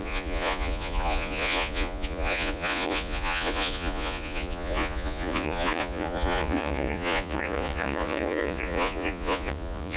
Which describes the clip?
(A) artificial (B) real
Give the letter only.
A